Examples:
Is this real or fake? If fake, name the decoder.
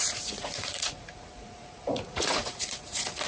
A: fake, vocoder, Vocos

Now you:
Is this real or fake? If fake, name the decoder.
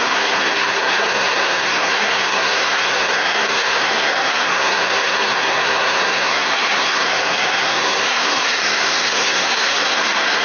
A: fake, codec, SNAC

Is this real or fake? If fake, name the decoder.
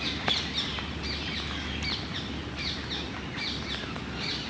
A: real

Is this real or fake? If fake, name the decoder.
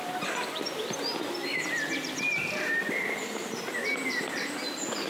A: real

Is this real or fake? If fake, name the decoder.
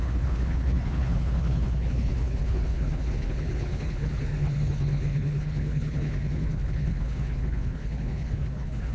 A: fake, codec, HILCodec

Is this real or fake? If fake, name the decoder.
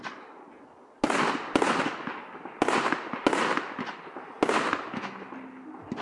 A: real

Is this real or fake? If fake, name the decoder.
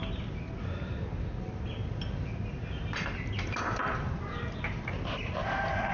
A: real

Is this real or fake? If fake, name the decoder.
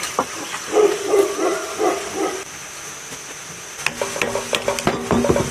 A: real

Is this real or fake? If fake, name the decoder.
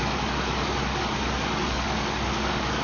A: fake, codec, DAC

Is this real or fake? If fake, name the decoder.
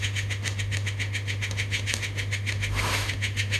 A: fake, autoencoder, DAC-VAE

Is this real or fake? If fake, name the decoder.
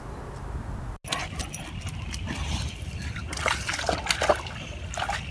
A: real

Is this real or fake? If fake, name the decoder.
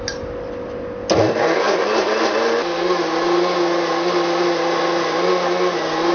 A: real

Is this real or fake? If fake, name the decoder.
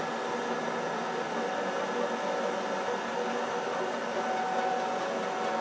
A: real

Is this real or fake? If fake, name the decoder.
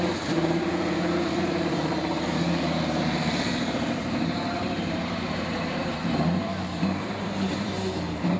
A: fake, vocoder, BigVGAN v2